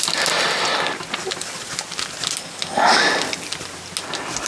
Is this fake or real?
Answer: real